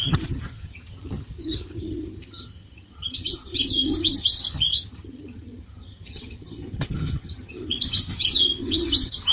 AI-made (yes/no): yes